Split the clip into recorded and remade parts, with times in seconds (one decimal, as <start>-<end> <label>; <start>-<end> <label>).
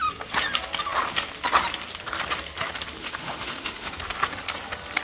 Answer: 0.0-3.0 recorded; 3.0-3.9 remade; 3.9-5.0 recorded